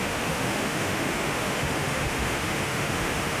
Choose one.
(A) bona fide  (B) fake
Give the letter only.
B